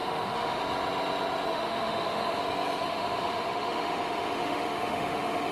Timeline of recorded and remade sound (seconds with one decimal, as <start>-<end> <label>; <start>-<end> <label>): 0.0-0.6 remade; 0.6-1.5 recorded; 1.5-2.4 remade; 2.4-2.8 recorded; 2.8-5.5 remade